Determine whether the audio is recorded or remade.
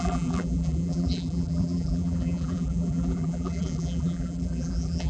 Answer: remade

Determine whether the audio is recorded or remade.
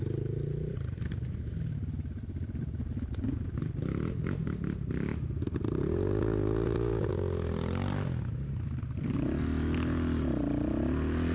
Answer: recorded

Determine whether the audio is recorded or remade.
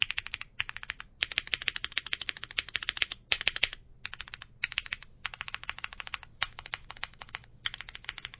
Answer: recorded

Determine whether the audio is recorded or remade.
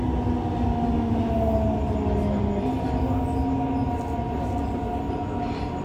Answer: recorded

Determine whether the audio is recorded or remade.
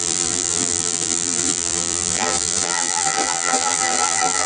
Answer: remade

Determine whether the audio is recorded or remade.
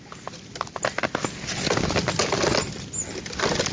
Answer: remade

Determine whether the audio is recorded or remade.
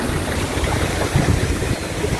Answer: recorded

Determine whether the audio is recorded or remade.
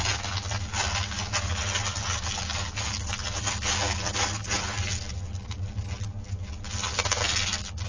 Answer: recorded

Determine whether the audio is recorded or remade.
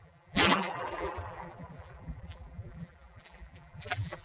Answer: remade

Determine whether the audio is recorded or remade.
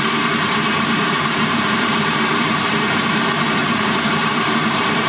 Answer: remade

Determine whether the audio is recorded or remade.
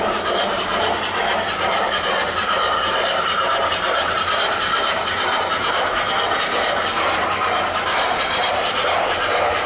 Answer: remade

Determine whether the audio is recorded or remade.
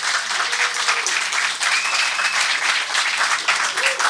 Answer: recorded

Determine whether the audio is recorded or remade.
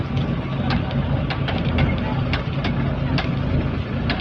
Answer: recorded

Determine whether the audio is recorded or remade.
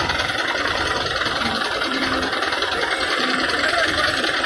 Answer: remade